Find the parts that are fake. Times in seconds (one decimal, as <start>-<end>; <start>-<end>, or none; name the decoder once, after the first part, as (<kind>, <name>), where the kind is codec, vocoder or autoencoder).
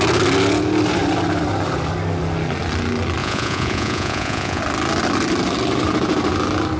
3.2-4.6 (vocoder, Vocos)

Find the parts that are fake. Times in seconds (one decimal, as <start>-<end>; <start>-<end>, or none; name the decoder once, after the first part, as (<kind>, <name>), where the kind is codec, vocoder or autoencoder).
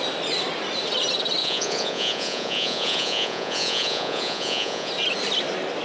1.4-4.9 (vocoder, Vocos)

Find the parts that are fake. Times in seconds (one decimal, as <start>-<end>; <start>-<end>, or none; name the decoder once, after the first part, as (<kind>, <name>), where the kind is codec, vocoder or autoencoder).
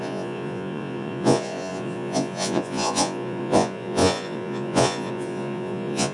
0.0-6.1 (vocoder, Vocos)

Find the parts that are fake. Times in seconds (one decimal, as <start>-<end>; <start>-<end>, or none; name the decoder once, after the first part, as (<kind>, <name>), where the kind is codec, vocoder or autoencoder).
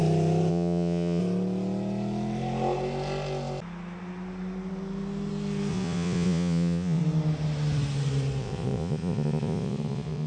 0.5-1.2 (vocoder, Vocos); 5.7-7.0; 8.4-10.3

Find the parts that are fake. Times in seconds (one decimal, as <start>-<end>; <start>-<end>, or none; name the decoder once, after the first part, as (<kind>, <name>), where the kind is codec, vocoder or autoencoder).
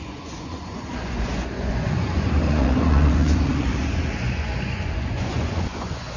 0.0-6.2 (vocoder, Vocos)